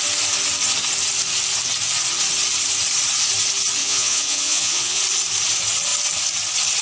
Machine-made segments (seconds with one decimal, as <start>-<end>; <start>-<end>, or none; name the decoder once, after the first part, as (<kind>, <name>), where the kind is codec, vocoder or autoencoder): 3.8-5.0 (vocoder, Vocos)